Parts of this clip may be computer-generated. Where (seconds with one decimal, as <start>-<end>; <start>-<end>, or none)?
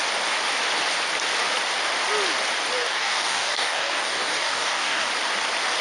2.8-5.1